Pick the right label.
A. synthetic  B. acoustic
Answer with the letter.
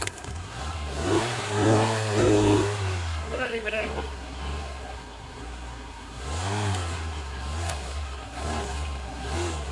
A